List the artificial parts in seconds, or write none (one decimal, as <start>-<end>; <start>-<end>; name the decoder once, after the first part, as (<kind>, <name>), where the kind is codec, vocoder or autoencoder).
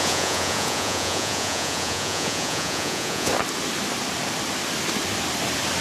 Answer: 0.0-3.3 (vocoder, Vocos)